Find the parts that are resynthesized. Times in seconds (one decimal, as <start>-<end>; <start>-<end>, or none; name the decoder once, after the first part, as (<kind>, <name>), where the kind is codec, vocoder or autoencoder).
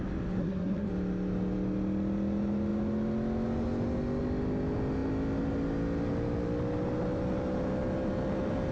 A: 0.4-0.9 (codec, SNAC)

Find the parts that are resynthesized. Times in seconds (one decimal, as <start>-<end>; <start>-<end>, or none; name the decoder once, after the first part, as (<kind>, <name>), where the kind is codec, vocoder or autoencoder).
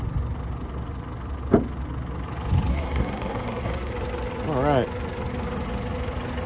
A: 2.7-3.9 (codec, SNAC)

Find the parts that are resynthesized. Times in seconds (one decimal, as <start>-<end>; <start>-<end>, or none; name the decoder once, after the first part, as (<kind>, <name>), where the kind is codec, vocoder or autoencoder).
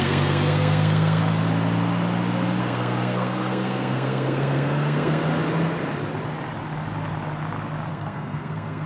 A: 0.0-1.2 (codec, SNAC); 2.6-5.2; 7.9-8.9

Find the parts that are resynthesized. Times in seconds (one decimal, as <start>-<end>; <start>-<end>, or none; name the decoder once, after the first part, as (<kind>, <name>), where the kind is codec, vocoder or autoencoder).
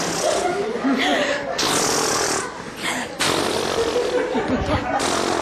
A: none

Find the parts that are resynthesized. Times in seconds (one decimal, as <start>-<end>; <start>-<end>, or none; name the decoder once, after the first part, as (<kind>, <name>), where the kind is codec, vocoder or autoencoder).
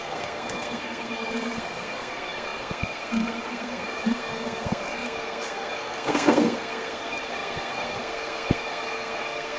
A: 0.0-9.6 (codec, SNAC)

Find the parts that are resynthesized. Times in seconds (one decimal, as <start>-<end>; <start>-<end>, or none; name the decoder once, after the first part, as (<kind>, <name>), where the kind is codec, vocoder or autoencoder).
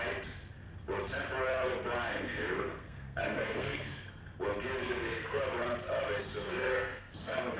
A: 2.1-4.2 (codec, SNAC); 4.8-5.4; 6.5-7.6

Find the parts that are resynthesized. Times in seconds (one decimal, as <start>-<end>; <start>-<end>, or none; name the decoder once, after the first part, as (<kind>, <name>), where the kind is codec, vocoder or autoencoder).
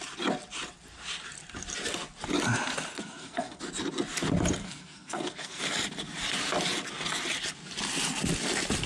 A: 2.9-3.6 (codec, SNAC); 4.6-5.6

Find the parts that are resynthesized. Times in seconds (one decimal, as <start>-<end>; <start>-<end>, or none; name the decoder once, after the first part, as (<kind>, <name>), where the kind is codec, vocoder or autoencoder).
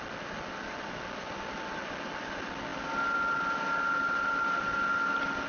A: none